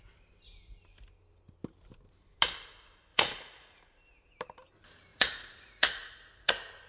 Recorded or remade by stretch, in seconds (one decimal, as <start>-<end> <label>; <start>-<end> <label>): 0.0-3.1 recorded; 3.1-3.8 remade; 3.8-5.1 recorded; 5.1-6.5 remade; 6.5-6.9 recorded